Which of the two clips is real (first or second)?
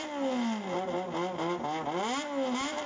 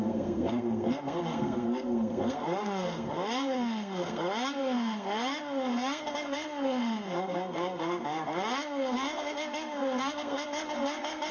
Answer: first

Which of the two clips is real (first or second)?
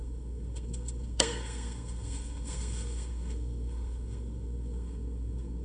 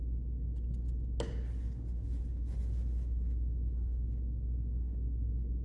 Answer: second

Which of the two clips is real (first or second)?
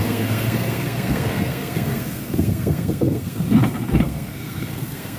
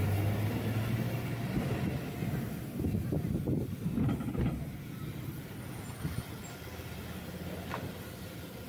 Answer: second